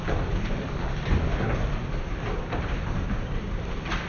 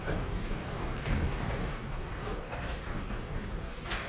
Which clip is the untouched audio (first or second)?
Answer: first